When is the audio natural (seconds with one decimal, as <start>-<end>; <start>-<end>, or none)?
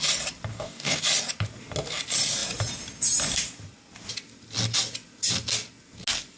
0.0-0.5; 1.0-6.4